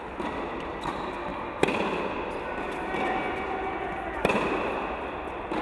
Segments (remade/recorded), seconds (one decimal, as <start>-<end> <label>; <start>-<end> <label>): 0.0-5.6 recorded